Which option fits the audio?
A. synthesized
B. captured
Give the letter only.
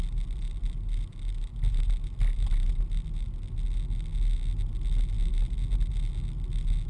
B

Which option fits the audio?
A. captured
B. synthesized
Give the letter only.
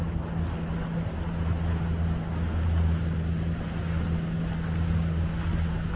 A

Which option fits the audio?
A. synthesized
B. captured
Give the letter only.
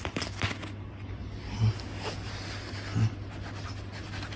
B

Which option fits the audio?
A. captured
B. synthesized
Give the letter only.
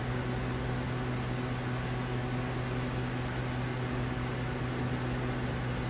A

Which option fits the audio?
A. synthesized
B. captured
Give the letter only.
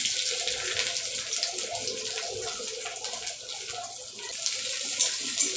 B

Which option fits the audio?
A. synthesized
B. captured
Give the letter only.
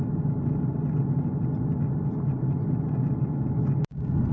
B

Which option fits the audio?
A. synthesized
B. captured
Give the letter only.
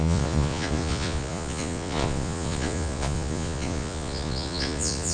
A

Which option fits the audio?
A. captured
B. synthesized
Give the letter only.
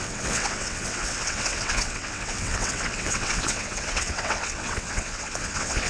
B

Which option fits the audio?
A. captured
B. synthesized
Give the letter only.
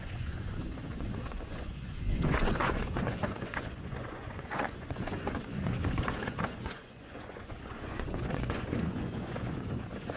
B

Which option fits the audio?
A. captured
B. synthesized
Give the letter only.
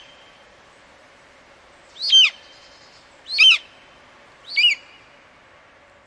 A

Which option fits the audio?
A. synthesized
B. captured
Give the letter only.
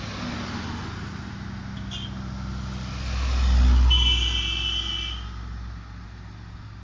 B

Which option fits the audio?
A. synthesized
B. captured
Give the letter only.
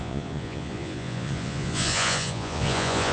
A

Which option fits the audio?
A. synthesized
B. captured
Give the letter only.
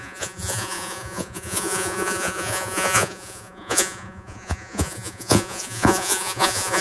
A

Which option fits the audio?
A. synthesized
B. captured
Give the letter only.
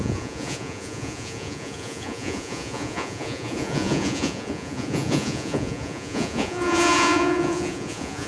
A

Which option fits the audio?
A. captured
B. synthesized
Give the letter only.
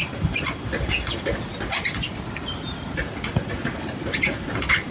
A